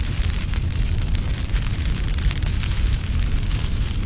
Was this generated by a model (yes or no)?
yes